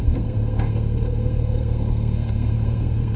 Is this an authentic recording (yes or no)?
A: no